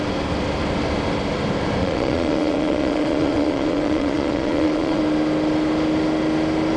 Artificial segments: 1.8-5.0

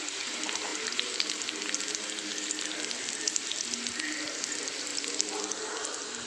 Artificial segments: none

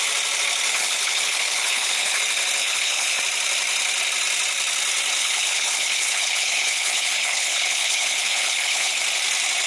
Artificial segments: 0.7-2.2; 2.6-3.2; 5.2-8.9

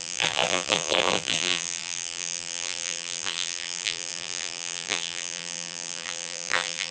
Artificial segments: 0.0-6.9

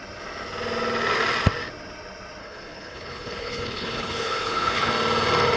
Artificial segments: 2.4-4.9

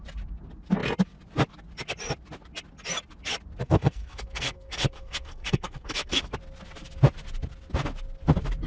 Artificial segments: 3.6-6.3

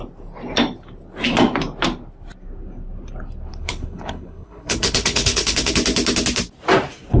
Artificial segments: 3.5-5.7